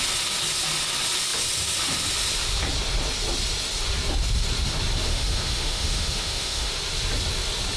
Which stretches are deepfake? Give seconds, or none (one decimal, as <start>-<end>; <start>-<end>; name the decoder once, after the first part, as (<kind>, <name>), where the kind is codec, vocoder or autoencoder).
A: 5.1-6.7 (autoencoder, DAC-VAE)